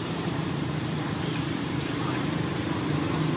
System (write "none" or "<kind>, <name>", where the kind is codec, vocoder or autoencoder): vocoder, BigVGAN v2